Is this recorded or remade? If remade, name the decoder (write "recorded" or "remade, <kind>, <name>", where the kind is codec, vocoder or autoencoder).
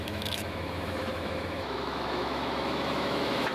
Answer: remade, autoencoder, DAC-VAE